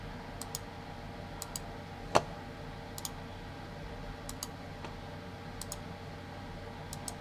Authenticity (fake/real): real